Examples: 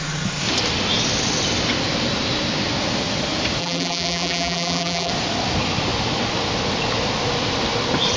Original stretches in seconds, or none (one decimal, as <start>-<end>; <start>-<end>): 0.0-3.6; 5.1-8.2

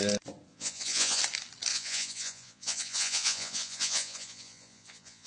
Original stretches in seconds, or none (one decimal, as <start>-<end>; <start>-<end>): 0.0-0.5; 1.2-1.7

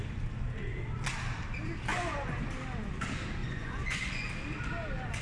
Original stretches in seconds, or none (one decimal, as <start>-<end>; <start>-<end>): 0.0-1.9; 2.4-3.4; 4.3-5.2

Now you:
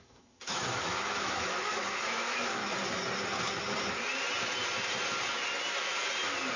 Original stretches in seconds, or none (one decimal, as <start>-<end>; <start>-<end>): 2.6-6.6

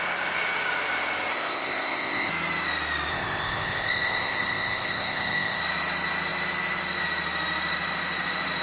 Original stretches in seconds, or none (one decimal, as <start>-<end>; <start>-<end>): 0.0-1.3; 2.3-3.1; 5.6-8.6

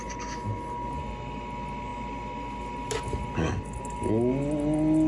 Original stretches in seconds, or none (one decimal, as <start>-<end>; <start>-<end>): 0.0-5.1

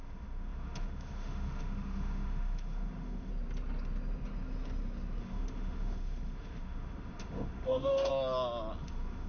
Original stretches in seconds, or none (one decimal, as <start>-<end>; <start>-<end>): 3.3-5.2; 8.1-8.8

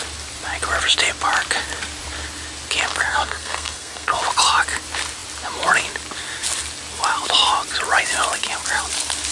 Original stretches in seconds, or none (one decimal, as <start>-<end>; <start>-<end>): 0.0-3.1; 4.2-9.3